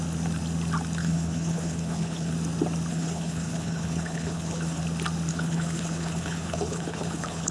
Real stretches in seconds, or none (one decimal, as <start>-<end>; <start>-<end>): 0.0-1.0; 2.3-2.9; 4.8-5.3